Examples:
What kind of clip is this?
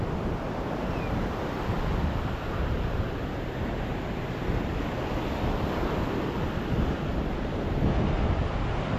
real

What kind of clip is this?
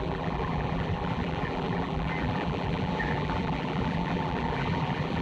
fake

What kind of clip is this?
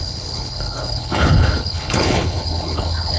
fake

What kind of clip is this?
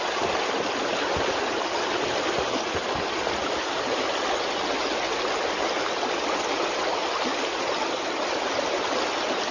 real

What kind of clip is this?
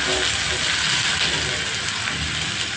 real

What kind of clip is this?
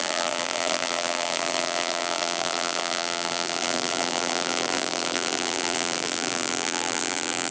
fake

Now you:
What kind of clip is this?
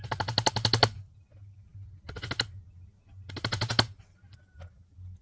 real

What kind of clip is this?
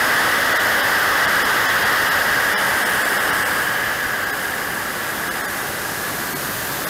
real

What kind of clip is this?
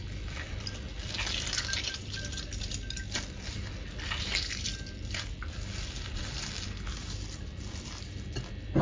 real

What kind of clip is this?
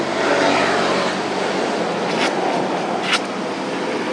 real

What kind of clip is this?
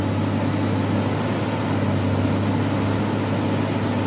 real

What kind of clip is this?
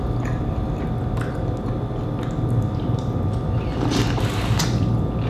real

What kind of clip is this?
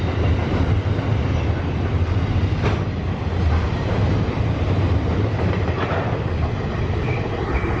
real